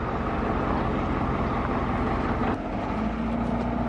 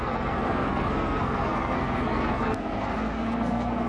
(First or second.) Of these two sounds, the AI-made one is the second